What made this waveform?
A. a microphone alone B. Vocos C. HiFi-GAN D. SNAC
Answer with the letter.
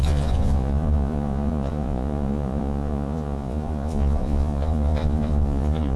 B